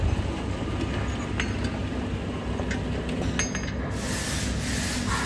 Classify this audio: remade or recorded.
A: recorded